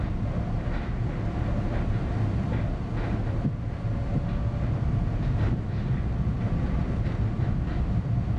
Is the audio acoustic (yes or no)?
yes